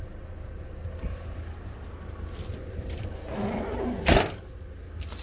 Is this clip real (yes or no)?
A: yes